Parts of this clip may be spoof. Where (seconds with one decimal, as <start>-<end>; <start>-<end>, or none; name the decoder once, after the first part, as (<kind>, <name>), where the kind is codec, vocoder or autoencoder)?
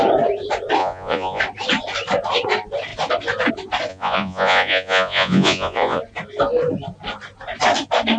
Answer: 0.8-1.4 (vocoder, Vocos); 3.9-6.0